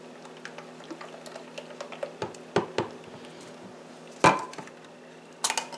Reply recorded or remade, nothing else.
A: recorded